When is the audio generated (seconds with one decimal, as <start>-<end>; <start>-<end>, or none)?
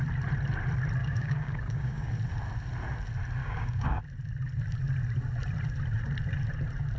1.0-2.1; 3.4-4.0